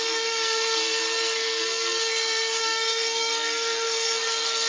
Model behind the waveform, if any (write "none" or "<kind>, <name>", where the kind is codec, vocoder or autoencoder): codec, SNAC